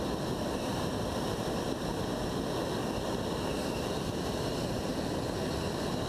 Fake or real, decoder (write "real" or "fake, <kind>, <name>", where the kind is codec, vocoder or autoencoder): real